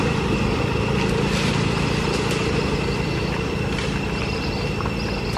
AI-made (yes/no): no